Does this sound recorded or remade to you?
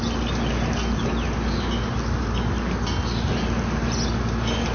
recorded